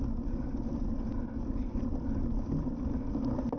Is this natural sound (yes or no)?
yes